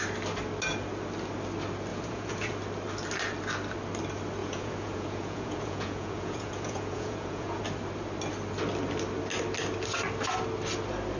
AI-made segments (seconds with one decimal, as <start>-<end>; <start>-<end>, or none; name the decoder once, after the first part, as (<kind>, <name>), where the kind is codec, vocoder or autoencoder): 1.9-2.5 (vocoder, Vocos); 4.4-7.6